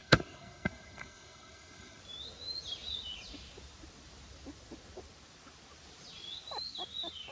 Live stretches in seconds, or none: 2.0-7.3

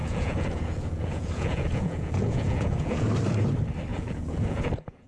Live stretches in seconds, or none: 3.1-3.9

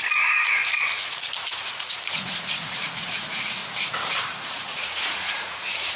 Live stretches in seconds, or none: 0.6-1.6; 3.6-4.3

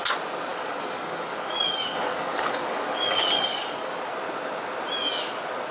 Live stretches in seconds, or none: 0.0-0.5; 3.9-5.7

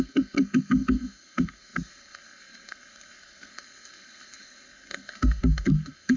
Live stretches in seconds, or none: none

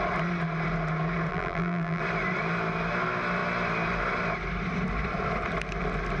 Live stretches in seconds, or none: 0.0-1.3; 2.0-6.2